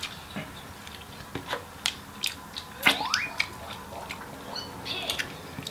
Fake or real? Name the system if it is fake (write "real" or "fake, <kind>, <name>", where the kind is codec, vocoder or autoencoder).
real